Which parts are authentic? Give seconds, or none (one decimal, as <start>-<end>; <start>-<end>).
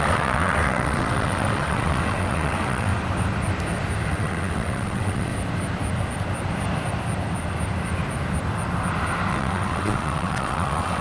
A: 2.9-4.1; 5.3-9.3